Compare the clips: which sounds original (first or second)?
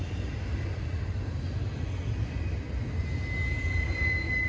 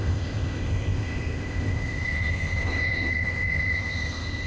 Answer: first